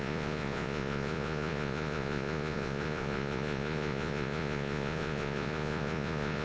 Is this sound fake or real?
fake